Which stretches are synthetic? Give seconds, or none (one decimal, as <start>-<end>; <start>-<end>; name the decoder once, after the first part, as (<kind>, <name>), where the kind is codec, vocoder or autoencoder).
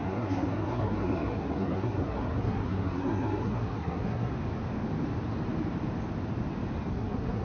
0.0-4.3 (codec, SNAC); 6.9-7.4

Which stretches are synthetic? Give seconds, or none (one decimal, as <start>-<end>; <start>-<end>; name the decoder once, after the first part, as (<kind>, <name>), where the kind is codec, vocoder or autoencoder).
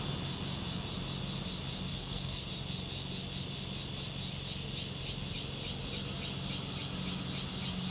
1.9-2.5 (codec, SNAC)